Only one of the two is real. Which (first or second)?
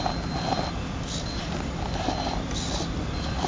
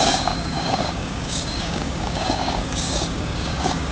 first